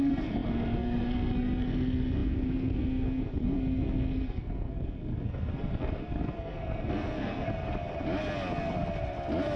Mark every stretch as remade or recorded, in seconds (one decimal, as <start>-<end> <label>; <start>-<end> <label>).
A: 0.0-7.5 remade; 7.5-9.6 recorded

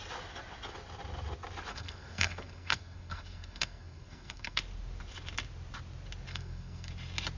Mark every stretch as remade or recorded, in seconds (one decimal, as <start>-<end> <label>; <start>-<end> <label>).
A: 0.0-1.7 recorded; 1.7-4.6 remade; 4.6-6.3 recorded; 6.3-6.9 remade; 6.9-7.4 recorded